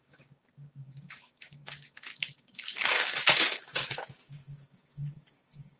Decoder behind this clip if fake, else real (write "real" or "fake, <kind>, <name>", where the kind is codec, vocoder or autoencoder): fake, codec, DAC